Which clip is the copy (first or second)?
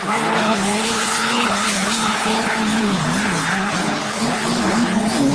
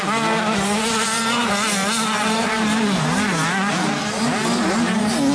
first